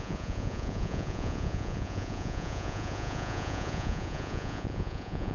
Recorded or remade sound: remade